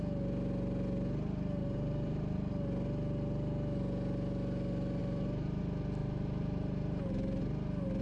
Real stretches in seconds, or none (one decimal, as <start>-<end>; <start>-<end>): 0.0-1.6; 2.5-5.0; 5.6-6.0; 7.4-8.0